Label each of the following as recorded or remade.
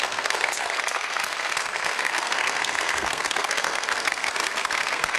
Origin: remade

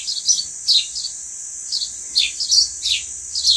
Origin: recorded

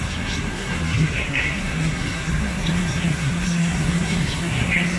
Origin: remade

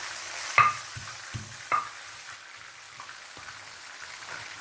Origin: recorded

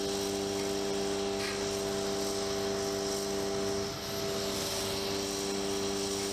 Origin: recorded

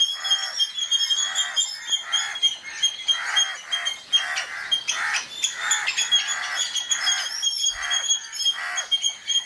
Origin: recorded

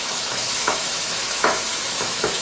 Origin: remade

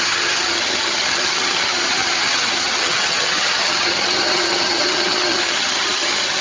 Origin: remade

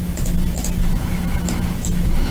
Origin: recorded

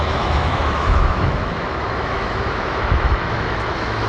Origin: remade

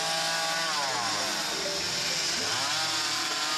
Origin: recorded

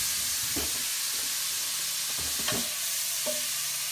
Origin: recorded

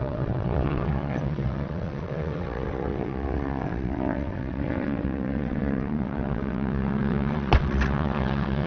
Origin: remade